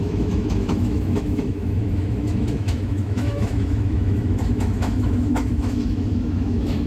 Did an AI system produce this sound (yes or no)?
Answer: yes